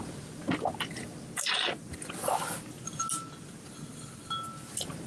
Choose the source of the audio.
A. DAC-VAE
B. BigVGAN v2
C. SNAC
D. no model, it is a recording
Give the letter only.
D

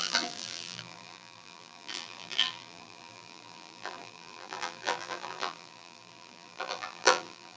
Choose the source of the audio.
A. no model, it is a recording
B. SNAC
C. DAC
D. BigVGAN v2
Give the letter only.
D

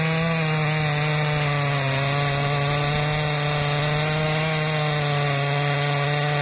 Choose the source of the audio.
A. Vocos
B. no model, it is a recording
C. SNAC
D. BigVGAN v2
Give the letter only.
B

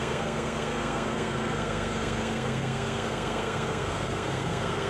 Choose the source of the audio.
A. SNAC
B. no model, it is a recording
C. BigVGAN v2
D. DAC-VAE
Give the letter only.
A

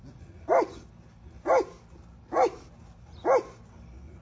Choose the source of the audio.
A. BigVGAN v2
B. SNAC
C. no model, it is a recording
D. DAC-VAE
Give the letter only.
C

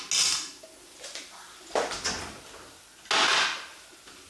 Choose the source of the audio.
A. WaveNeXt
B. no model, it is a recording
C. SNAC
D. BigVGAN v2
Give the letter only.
B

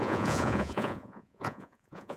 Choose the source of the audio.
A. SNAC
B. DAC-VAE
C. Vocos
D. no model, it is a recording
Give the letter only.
C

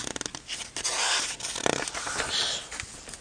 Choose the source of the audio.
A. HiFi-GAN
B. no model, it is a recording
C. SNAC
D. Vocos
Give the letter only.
B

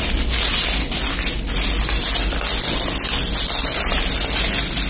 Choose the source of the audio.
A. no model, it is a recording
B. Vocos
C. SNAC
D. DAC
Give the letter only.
A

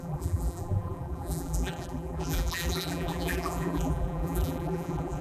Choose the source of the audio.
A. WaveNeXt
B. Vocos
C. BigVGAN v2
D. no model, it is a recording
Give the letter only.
C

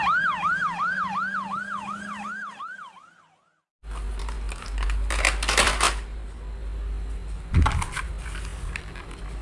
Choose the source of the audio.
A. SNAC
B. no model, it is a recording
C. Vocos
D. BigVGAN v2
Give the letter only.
B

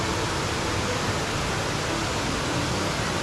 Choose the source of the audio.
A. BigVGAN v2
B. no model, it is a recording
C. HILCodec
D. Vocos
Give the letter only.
B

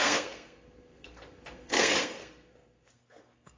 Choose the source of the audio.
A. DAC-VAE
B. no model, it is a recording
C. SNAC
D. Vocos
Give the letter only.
C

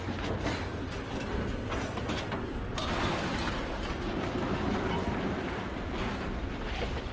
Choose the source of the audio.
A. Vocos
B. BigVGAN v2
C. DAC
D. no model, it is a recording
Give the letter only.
B